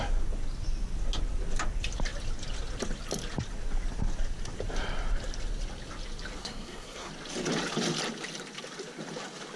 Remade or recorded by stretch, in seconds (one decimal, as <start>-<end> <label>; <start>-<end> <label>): 0.0-6.4 recorded; 6.4-7.1 remade; 7.1-9.6 recorded